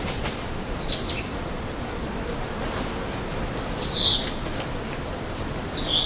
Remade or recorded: recorded